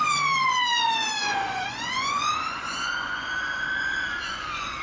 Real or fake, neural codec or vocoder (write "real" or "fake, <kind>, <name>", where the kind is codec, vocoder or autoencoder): fake, vocoder, Vocos